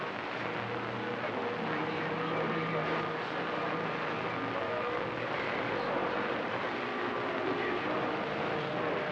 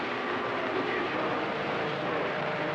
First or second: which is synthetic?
second